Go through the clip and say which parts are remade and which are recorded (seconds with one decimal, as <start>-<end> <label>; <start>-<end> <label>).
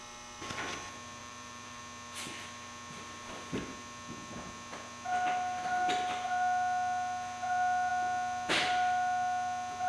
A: 0.0-1.2 recorded; 1.2-1.8 remade; 1.8-9.9 recorded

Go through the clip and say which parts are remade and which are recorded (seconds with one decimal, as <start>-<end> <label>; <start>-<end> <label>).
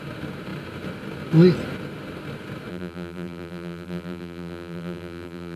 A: 0.0-2.7 recorded; 2.7-5.6 remade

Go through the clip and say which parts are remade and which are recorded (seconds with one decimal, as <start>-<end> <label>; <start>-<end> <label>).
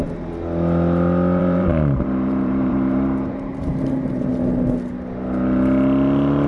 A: 0.0-1.4 recorded; 1.4-4.3 remade; 4.3-6.5 recorded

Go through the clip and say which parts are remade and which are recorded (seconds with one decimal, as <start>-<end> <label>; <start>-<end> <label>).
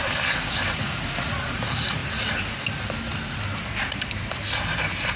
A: 0.0-2.0 remade; 2.0-3.6 recorded; 3.6-5.2 remade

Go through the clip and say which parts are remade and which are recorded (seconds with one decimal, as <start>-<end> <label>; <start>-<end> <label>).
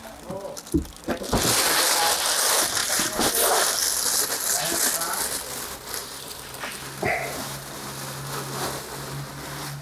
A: 0.0-2.8 recorded; 2.8-3.3 remade; 3.3-6.0 recorded; 6.0-6.6 remade; 6.6-9.8 recorded